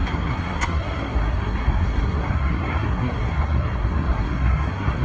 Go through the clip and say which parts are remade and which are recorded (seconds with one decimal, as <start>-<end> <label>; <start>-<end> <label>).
0.0-5.0 remade